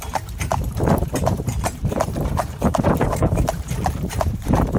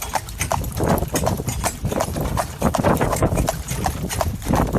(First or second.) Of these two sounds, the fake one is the first